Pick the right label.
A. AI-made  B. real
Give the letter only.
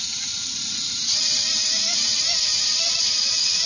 A